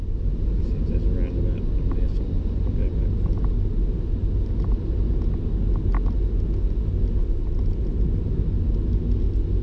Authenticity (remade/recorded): recorded